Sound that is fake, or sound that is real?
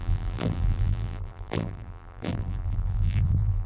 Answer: fake